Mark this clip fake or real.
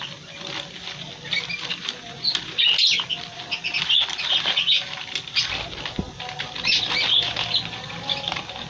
real